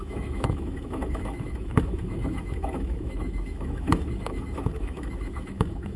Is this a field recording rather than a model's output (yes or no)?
no